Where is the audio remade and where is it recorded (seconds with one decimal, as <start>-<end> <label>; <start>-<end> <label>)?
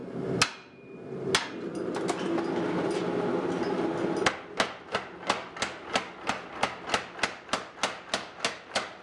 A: 0.0-9.0 recorded